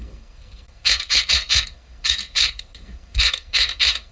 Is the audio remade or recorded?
remade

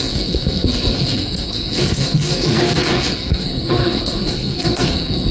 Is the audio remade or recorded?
remade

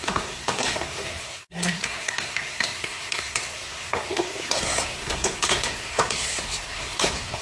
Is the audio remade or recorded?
remade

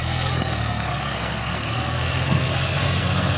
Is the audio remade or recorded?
remade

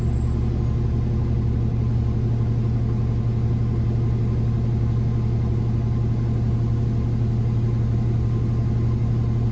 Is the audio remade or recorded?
recorded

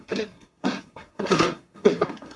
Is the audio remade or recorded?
remade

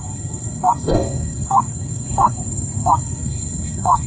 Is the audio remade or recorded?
remade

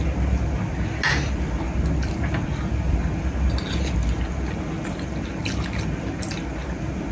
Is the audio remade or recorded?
recorded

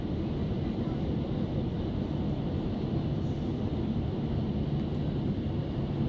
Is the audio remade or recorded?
recorded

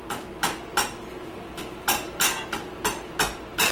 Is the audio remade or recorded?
recorded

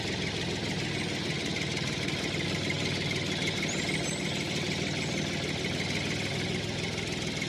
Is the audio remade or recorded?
recorded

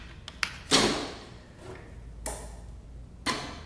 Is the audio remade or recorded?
recorded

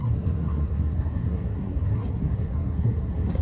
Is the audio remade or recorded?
remade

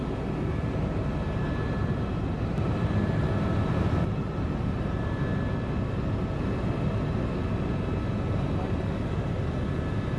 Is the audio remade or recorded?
recorded